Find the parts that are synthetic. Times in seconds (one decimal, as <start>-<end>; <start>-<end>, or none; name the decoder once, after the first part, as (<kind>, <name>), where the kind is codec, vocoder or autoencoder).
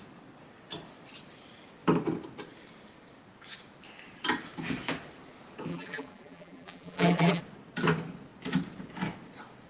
5.7-7.4 (vocoder, BigVGAN v2)